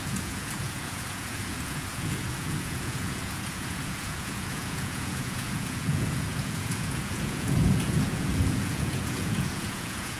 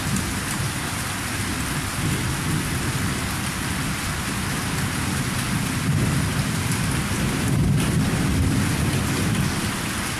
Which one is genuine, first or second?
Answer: second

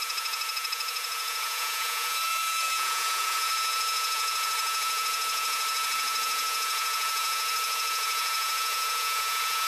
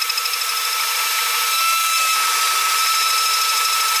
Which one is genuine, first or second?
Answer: second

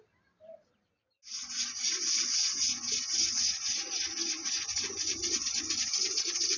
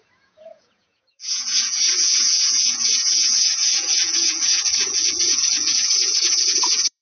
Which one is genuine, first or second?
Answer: first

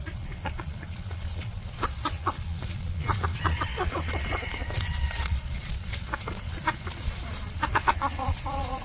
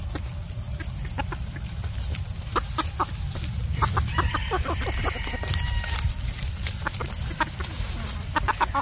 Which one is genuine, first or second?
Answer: second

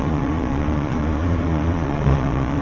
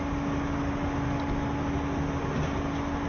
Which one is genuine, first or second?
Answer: second